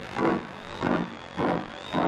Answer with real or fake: fake